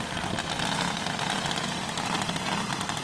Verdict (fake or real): real